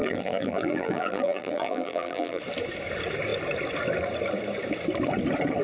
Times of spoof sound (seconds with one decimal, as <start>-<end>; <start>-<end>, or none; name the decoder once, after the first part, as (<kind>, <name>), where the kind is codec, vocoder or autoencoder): 0.0-2.4 (vocoder, BigVGAN v2)